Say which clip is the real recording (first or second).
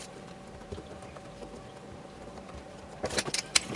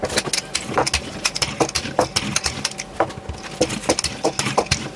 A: second